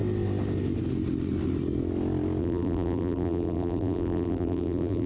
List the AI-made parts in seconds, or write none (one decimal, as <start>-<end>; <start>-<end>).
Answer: 2.4-5.1